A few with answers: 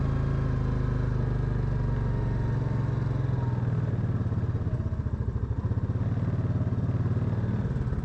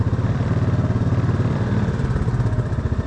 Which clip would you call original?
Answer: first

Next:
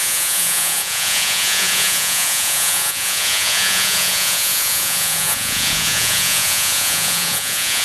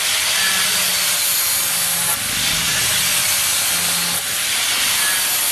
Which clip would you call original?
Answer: second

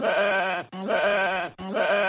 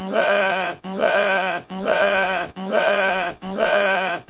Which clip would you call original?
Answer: first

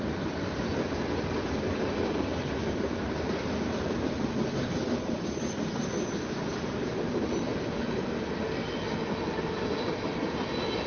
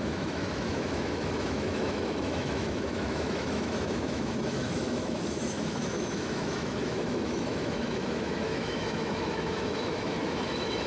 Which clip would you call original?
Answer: first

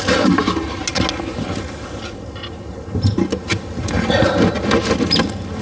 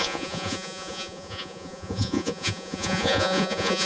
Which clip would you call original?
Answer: first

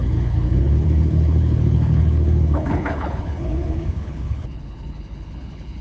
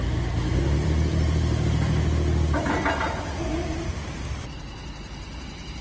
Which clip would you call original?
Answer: second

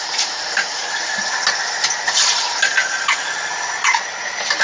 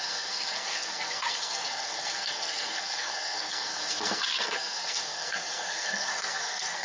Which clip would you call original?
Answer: first